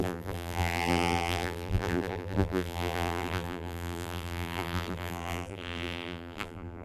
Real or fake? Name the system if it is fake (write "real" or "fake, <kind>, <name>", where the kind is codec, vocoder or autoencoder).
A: fake, vocoder, BigVGAN v2